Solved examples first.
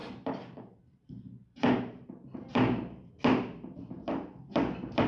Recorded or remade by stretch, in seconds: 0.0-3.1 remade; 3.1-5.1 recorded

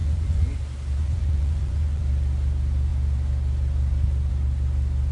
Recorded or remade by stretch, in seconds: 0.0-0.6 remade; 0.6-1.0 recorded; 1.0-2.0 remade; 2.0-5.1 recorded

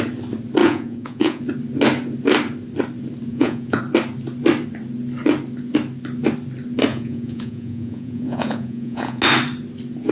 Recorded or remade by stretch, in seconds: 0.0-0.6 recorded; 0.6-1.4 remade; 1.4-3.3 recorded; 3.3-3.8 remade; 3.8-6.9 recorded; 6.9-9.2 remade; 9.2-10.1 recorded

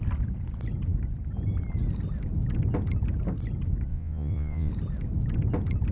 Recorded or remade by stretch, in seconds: 0.0-3.9 recorded; 3.9-4.7 remade; 4.7-5.9 recorded

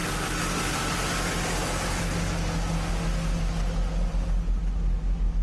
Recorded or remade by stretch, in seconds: 0.0-5.4 recorded